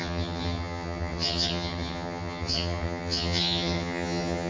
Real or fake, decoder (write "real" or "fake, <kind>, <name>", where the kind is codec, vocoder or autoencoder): fake, vocoder, HiFi-GAN